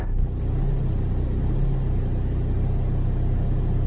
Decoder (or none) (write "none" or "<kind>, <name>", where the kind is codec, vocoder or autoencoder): none